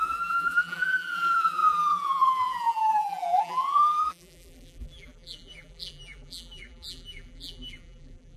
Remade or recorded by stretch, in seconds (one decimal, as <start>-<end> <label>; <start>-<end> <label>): 0.0-8.4 remade